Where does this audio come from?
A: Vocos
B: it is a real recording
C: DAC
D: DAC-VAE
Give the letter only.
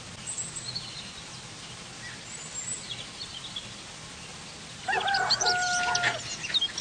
B